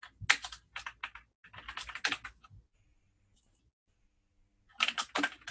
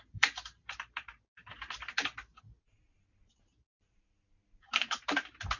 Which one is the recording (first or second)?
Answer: first